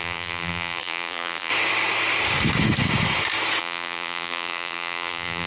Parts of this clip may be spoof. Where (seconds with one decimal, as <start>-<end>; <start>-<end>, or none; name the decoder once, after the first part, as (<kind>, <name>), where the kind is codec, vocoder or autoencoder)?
0.0-1.5 (vocoder, BigVGAN v2); 3.6-5.5